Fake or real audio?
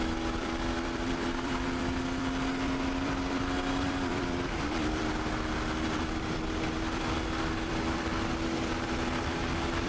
fake